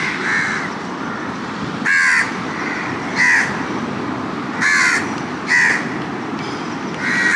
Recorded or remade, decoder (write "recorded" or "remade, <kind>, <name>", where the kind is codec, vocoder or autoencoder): recorded